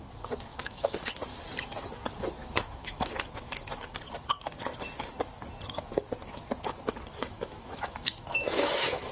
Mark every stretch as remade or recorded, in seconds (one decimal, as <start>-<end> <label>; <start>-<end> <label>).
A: 0.0-0.5 recorded; 0.5-1.1 remade; 1.1-2.4 recorded; 2.4-3.1 remade; 3.1-7.2 recorded; 7.2-9.1 remade

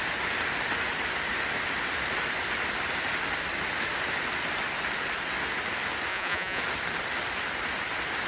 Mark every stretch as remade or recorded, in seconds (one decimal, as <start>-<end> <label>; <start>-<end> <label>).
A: 0.0-6.1 recorded; 6.1-6.6 remade; 6.6-8.3 recorded

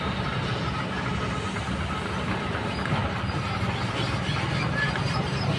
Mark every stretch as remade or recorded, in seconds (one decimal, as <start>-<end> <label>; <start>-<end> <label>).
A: 0.0-5.6 recorded

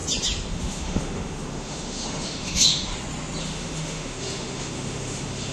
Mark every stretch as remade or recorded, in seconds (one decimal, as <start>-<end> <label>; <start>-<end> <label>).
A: 0.0-0.5 recorded; 0.5-2.9 remade; 2.9-3.4 recorded; 3.4-5.5 remade

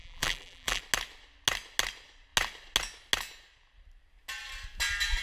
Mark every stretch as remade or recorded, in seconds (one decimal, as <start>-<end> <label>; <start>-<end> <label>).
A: 0.0-0.8 remade; 0.8-5.2 recorded

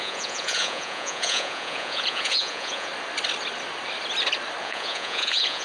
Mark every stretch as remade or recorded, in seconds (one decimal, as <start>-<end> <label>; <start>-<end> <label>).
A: 0.0-2.9 remade; 2.9-4.6 recorded; 4.6-5.6 remade